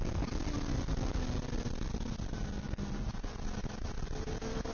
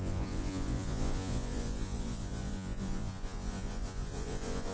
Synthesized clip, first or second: second